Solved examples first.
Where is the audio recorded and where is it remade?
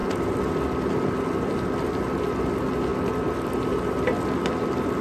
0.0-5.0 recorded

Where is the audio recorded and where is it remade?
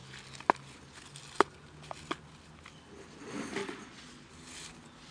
0.0-3.6 recorded; 3.6-4.3 remade; 4.3-5.1 recorded